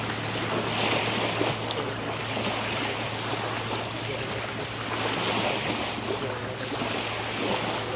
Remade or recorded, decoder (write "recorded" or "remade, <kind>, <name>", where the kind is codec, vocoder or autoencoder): recorded